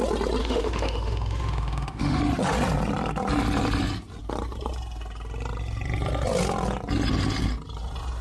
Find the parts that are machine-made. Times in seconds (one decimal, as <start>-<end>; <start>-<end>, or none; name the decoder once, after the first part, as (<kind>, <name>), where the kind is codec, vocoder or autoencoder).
0.4-2.2 (autoencoder, DAC-VAE)